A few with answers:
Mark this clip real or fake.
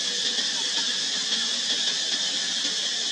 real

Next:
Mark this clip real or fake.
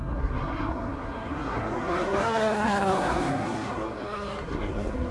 fake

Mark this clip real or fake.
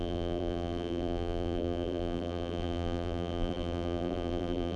fake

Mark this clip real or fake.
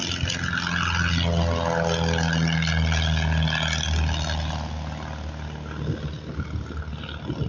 real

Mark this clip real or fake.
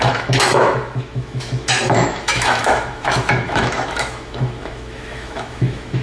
fake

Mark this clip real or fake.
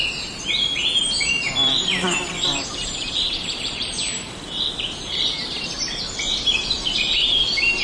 fake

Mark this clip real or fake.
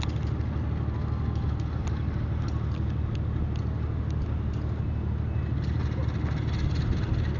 real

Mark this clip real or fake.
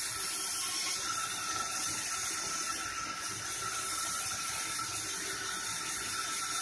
real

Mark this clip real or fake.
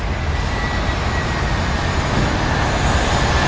real